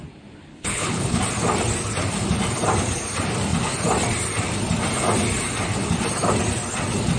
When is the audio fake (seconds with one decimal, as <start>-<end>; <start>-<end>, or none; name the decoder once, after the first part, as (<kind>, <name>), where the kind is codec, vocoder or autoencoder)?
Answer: 0.5-1.2 (codec, HILCodec)